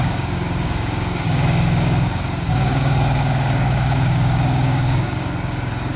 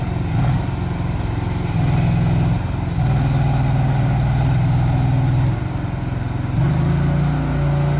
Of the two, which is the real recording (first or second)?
second